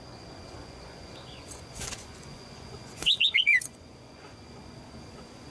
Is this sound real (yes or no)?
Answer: no